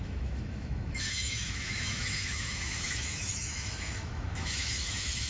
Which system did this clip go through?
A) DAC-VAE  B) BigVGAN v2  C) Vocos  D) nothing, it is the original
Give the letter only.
A